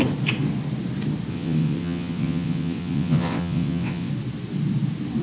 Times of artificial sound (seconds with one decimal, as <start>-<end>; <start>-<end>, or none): 1.3-4.1